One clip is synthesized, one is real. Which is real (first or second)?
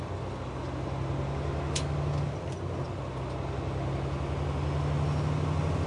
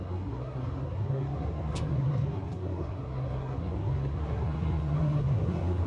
first